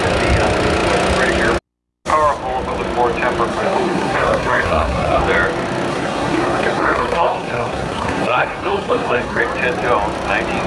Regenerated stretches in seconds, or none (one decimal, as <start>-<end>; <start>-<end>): 3.5-5.2; 5.9-9.4